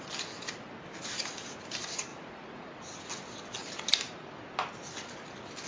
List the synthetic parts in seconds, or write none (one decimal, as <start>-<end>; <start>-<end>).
2.1-2.8

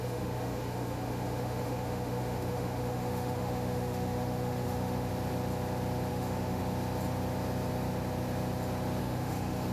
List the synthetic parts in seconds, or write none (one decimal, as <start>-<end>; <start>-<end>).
0.0-5.1; 6.1-6.6; 9.0-9.7